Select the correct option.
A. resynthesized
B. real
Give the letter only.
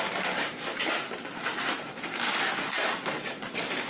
A